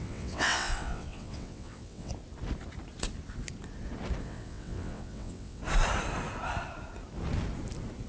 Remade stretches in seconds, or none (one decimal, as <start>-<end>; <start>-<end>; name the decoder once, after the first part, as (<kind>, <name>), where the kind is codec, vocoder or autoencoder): 0.0-2.1 (vocoder, WaveNeXt); 4.2-5.6